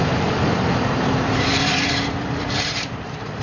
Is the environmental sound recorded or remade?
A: remade